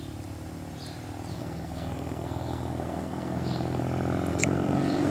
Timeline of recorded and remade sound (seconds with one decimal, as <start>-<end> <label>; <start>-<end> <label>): 0.0-1.3 recorded; 1.3-3.8 remade; 3.8-4.3 recorded; 4.3-5.1 remade